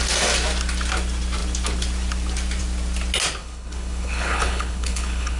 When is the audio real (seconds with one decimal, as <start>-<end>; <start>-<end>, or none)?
0.0-3.4